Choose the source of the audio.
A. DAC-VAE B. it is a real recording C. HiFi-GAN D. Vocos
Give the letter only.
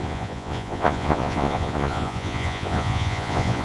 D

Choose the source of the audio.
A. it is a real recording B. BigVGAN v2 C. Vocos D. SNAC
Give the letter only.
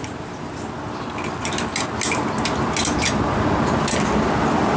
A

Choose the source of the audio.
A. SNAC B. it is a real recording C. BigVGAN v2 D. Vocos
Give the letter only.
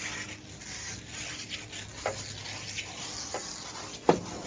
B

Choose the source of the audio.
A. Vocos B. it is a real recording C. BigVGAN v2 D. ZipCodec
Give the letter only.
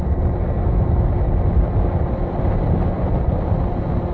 B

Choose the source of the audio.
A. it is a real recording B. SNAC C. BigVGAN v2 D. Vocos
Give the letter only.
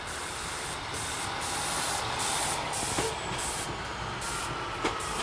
A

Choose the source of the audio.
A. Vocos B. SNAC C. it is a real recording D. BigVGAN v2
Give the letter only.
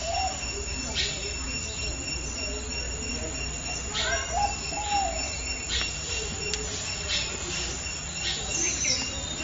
C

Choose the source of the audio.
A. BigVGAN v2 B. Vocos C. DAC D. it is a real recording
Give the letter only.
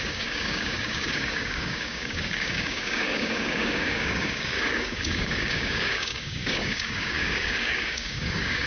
C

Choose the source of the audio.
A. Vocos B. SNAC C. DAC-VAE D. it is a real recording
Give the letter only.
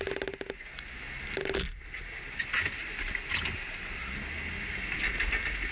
D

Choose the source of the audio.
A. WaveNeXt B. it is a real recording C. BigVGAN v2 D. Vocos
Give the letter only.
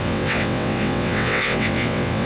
A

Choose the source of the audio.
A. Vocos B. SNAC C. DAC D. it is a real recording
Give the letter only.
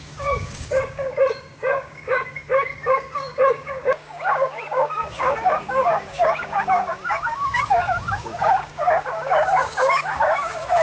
C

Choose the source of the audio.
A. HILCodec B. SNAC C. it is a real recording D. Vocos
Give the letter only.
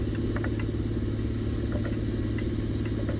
C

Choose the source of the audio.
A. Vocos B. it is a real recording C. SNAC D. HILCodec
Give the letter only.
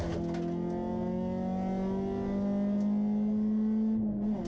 B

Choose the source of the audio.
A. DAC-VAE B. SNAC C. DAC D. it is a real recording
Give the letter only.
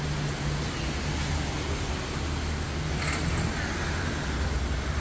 D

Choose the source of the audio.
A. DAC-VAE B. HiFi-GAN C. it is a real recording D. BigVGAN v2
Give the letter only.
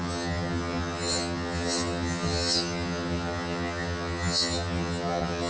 B